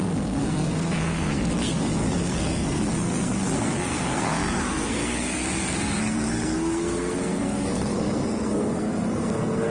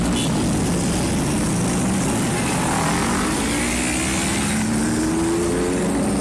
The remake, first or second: first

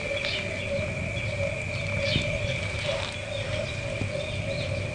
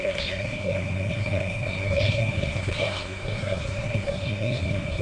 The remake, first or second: second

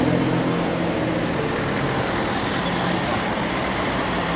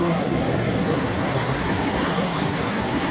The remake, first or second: second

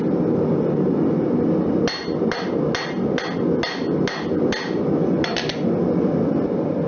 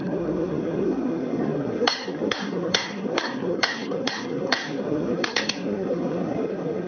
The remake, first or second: second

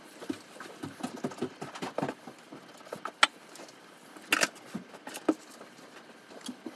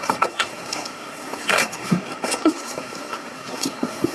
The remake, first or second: second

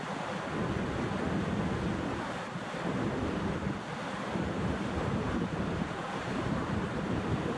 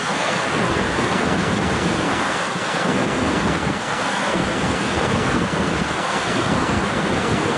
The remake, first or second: second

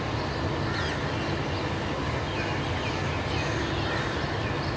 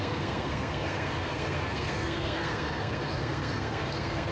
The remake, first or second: second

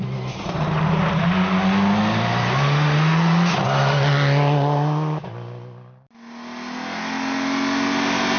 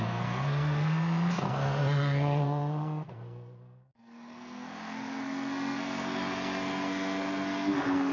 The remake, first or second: second